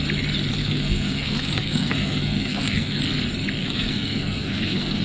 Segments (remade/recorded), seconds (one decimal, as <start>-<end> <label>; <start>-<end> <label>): 0.0-0.6 recorded; 0.6-3.0 remade; 3.0-3.6 recorded; 3.6-5.0 remade